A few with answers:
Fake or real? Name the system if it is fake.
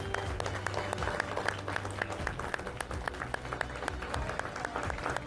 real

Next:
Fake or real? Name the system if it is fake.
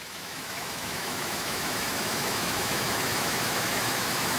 fake, autoencoder, DAC-VAE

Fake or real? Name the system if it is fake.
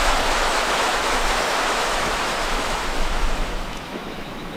fake, autoencoder, DAC-VAE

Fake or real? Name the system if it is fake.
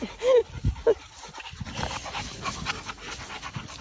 real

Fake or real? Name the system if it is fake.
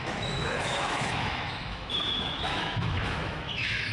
fake, autoencoder, DAC-VAE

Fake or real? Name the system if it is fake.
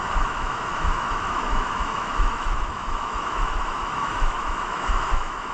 fake, autoencoder, DAC-VAE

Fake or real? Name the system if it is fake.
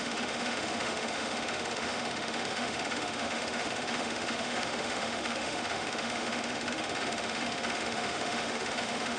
fake, autoencoder, DAC-VAE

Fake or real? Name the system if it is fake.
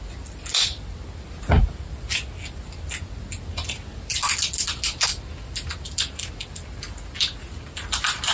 real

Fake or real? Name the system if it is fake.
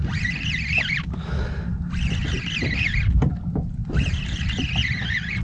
real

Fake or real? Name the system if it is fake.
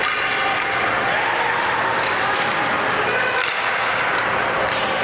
real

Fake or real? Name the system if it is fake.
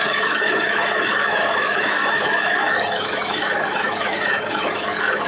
fake, autoencoder, DAC-VAE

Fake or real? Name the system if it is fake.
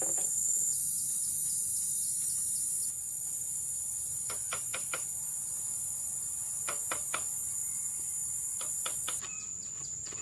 real